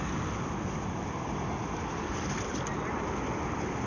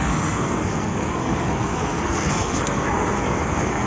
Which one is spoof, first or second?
second